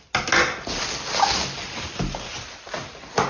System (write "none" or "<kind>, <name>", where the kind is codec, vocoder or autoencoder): none